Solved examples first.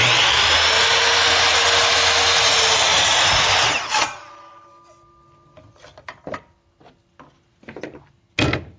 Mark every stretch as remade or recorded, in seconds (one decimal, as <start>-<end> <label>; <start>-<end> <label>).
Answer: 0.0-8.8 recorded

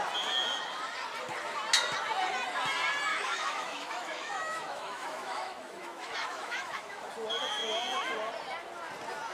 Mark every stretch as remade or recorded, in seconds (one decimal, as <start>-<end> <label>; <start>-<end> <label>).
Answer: 0.0-3.1 recorded; 3.1-7.1 remade; 7.1-9.3 recorded

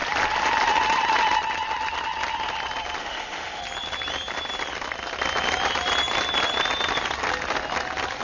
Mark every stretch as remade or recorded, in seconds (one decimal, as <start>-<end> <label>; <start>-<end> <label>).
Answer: 0.0-3.0 recorded; 3.0-3.6 remade; 3.6-8.2 recorded